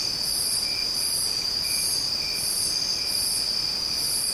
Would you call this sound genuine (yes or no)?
no